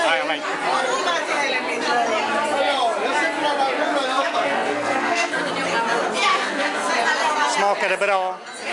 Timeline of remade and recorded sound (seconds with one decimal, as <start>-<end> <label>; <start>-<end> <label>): 0.0-4.1 recorded; 4.1-5.5 remade; 5.5-6.3 recorded; 6.3-6.9 remade; 6.9-8.7 recorded